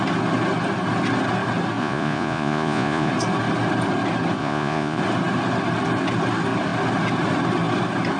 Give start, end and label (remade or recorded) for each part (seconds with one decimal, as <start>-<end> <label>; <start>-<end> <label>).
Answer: 0.0-1.8 recorded; 1.8-3.1 remade; 3.1-4.4 recorded; 4.4-5.0 remade; 5.0-8.2 recorded